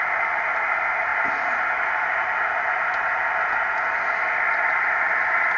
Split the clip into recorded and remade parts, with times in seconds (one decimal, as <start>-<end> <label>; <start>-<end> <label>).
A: 0.0-5.6 recorded